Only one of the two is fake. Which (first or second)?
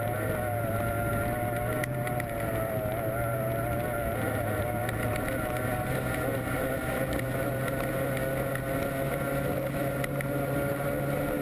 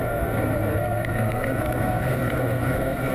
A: second